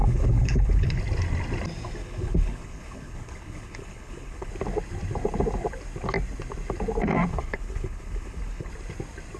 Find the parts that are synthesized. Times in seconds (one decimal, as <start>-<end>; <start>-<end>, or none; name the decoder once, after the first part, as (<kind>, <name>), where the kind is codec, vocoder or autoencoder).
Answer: 0.0-1.0 (codec, HILCodec); 2.0-4.5; 7.3-8.7